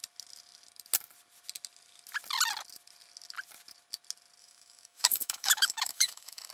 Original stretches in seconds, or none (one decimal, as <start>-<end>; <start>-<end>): 0.0-4.4